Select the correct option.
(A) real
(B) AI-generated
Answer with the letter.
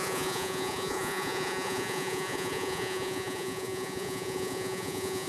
B